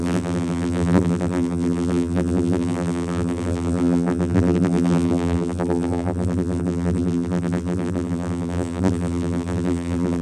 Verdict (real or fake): fake